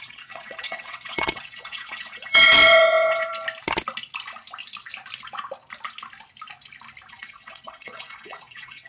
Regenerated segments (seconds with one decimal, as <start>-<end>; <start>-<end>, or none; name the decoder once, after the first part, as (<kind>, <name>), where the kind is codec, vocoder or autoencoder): 0.0-3.3 (vocoder, WaveNeXt); 7.1-8.9